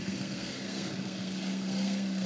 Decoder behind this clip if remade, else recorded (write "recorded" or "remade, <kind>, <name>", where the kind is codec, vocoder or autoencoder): remade, codec, SNAC